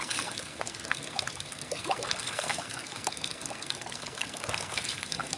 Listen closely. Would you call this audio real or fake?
fake